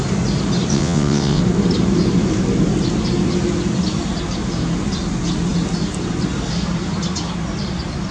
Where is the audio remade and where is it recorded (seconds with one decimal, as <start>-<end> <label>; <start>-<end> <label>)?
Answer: 0.0-0.7 recorded; 0.7-1.4 remade; 1.4-8.1 recorded